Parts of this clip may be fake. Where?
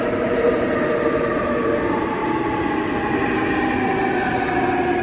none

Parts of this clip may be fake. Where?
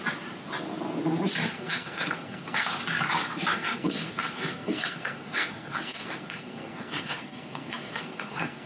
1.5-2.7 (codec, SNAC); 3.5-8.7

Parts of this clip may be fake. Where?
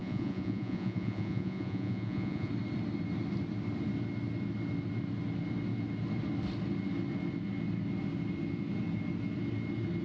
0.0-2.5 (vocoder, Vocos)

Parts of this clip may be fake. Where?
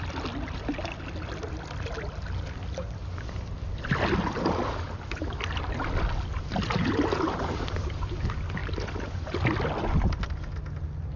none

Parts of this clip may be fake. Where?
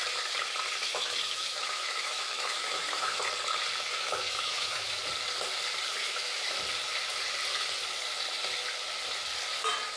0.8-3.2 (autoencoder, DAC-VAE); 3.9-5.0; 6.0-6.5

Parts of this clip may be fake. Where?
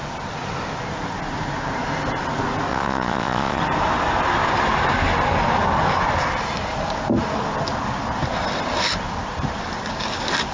2.7-3.6 (vocoder, Vocos)